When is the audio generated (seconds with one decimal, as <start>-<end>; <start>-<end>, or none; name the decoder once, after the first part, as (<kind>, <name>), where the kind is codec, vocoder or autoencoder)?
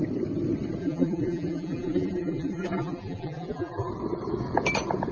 0.8-3.9 (vocoder, BigVGAN v2)